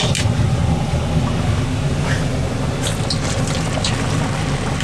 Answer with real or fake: real